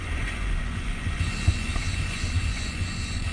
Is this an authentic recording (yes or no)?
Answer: no